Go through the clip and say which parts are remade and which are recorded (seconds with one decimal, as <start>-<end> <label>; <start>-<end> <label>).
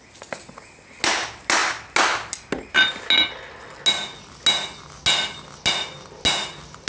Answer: 0.0-6.9 recorded